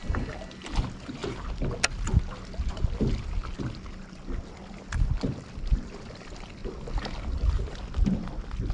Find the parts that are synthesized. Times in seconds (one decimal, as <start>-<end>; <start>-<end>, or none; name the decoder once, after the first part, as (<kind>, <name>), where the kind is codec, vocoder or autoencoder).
none